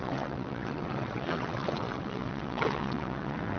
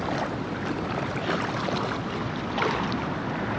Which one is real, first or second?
second